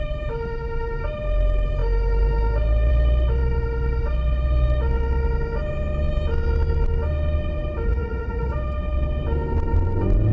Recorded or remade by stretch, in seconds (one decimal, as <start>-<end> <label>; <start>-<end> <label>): 0.0-7.9 recorded; 7.9-8.5 remade; 8.5-10.3 recorded

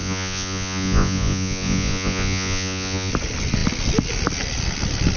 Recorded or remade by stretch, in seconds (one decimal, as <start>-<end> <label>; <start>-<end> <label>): 0.0-3.1 remade; 3.1-5.2 recorded

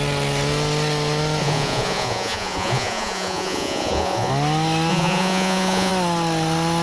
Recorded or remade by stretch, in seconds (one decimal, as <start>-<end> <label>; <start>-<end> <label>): 0.0-1.4 recorded; 1.4-4.3 remade; 4.3-4.9 recorded; 4.9-5.9 remade; 5.9-6.8 recorded

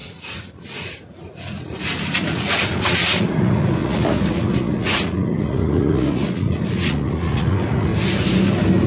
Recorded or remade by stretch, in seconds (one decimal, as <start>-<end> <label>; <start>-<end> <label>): 0.0-7.9 remade; 7.9-8.9 recorded